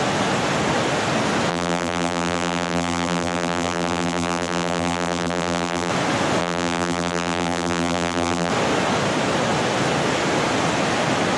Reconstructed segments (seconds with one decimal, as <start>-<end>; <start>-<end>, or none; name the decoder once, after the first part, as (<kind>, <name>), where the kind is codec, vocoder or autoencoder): 1.5-5.9 (vocoder, BigVGAN v2); 6.4-8.5